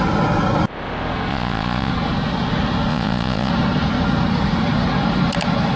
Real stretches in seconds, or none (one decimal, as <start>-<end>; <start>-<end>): 0.0-1.3; 1.9-2.9; 3.5-5.8